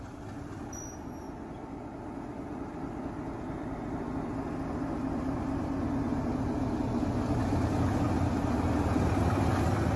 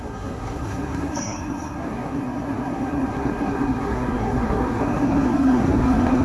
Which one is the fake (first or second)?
second